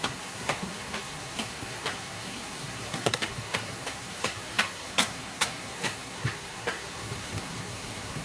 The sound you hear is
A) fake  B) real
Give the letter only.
A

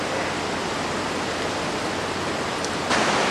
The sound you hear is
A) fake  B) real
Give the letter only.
B